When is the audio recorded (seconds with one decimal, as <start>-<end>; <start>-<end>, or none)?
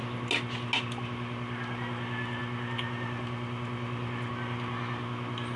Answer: 0.0-5.6